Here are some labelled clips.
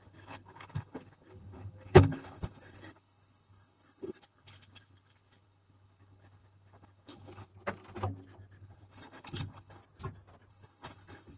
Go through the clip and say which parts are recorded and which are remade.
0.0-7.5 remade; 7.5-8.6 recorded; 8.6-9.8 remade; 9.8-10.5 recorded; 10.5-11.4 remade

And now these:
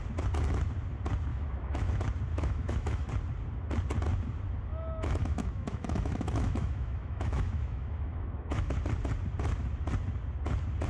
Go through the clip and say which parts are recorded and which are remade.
0.0-1.3 recorded; 1.3-1.9 remade; 1.9-2.3 recorded; 2.3-3.1 remade; 3.1-4.7 recorded; 4.7-8.7 remade; 8.7-10.9 recorded

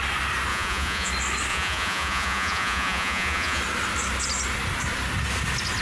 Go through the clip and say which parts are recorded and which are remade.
0.0-0.5 recorded; 0.5-1.1 remade; 1.1-1.5 recorded; 1.5-3.6 remade; 3.6-5.8 recorded